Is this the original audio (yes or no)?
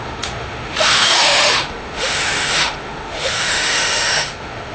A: no